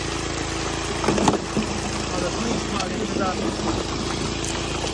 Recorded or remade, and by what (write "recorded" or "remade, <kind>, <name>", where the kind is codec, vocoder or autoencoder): recorded